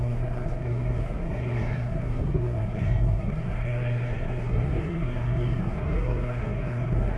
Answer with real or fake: fake